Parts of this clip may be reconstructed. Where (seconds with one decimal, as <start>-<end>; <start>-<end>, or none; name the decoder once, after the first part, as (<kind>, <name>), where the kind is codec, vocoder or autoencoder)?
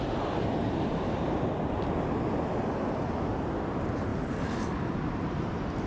none